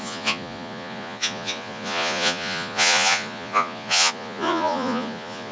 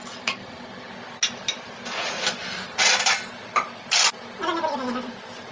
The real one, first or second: second